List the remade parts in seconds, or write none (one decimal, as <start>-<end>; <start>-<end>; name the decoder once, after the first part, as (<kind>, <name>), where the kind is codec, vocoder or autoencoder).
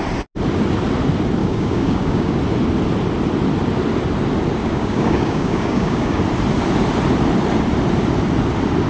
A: 1.4-2.4 (codec, DAC); 4.6-6.2